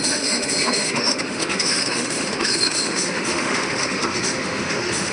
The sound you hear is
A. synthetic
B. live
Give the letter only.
A